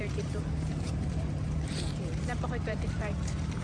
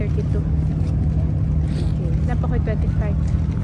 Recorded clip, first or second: second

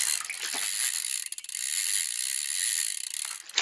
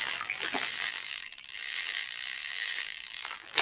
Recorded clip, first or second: first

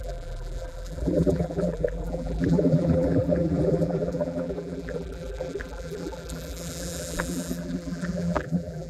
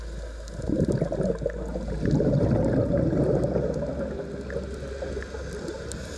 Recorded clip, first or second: second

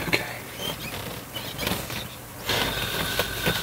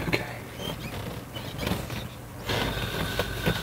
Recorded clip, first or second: second